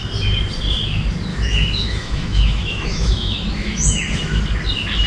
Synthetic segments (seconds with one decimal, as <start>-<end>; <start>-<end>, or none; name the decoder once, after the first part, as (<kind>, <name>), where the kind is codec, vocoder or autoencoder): 1.3-4.4 (autoencoder, DAC-VAE)